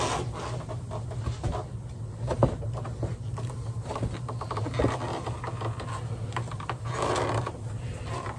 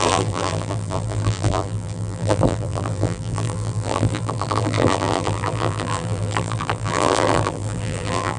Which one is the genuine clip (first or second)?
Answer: first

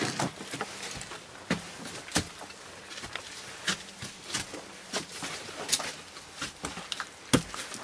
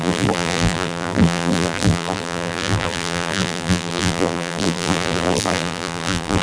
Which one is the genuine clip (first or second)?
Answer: first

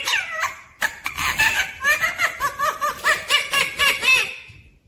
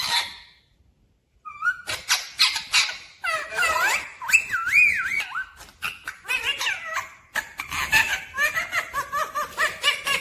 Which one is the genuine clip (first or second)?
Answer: second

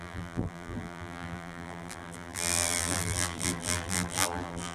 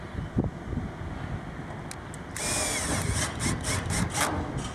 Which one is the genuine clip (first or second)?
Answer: second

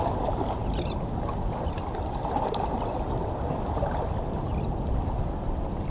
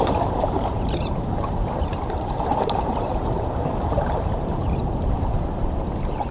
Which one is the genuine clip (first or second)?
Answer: first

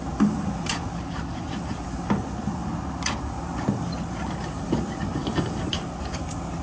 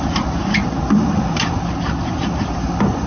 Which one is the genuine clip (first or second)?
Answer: first